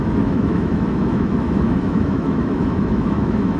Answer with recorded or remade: remade